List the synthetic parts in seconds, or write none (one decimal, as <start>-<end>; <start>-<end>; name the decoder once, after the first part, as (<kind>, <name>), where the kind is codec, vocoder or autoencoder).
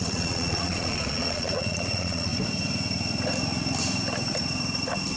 0.0-2.3 (vocoder, Vocos)